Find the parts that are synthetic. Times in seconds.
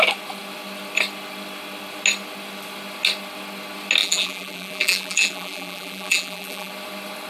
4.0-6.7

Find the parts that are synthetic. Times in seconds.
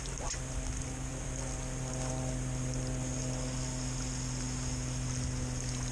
1.1-1.9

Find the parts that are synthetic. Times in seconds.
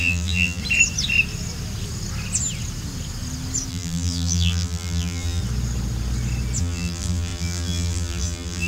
0.0-0.6; 3.7-5.4; 6.6-8.7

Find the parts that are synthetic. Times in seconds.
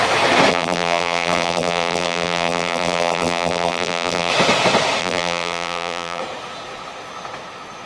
0.5-4.3; 5.0-6.2